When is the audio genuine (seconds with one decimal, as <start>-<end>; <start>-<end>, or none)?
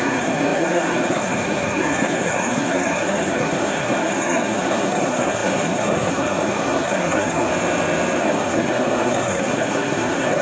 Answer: 7.5-8.2